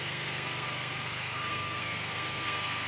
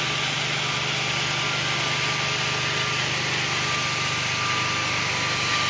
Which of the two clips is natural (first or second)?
second